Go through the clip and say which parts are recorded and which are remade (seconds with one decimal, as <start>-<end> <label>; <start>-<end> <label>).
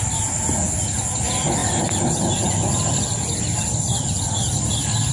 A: 0.0-5.1 recorded